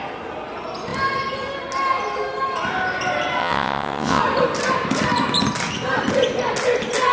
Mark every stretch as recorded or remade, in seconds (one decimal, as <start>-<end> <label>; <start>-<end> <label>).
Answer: 0.0-3.4 recorded; 3.4-4.2 remade; 4.2-7.1 recorded